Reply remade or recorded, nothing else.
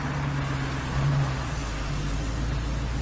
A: recorded